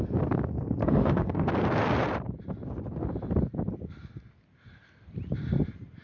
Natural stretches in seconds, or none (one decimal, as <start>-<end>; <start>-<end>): 0.0-0.8; 1.5-6.0